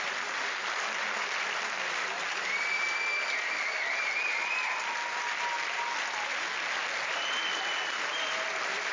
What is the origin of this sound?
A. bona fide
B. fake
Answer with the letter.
A